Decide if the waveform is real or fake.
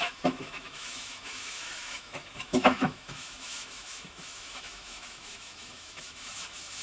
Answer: fake